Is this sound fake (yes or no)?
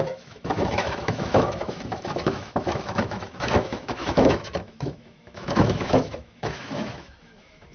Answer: yes